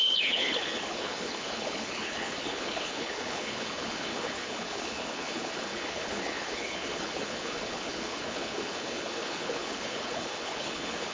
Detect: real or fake fake